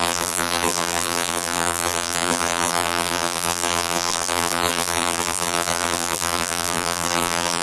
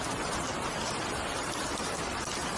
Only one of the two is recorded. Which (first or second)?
second